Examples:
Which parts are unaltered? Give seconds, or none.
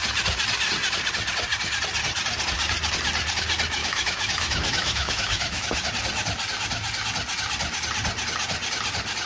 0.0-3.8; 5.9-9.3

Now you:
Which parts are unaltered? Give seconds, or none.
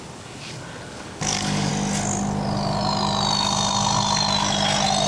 1.7-5.1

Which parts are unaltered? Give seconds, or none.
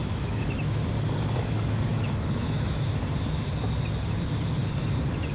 0.8-1.9; 3.0-5.3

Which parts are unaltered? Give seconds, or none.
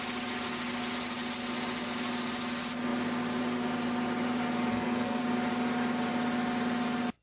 0.0-4.7; 5.2-7.2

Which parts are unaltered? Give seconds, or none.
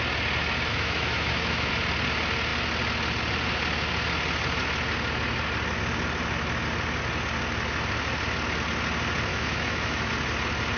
0.0-0.7; 1.7-9.3; 10.1-10.8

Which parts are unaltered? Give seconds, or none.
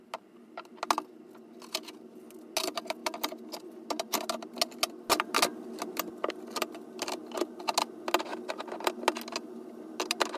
0.0-10.4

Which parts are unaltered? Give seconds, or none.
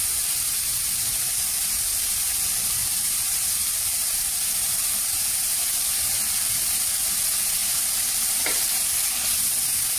1.7-2.8; 7.1-7.6; 8.7-10.0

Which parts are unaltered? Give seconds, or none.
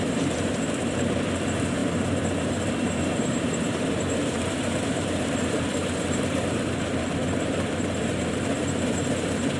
none